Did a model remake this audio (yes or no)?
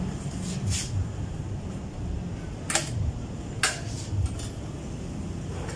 no